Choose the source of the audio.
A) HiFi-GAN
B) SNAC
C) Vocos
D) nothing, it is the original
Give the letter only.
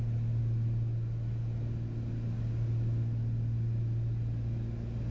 D